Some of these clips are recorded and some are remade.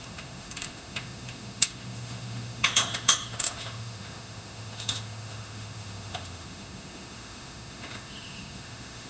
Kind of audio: remade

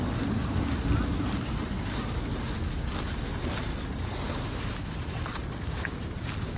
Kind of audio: recorded